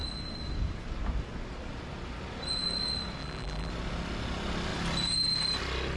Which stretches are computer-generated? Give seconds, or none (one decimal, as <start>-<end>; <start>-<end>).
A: 3.2-3.7